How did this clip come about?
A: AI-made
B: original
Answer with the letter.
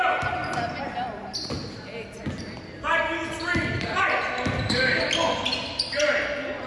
B